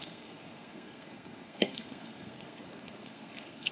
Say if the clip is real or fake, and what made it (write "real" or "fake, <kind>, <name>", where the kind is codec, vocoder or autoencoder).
fake, codec, SNAC